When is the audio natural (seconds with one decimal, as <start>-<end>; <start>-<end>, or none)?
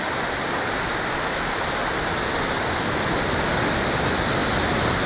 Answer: 0.0-5.1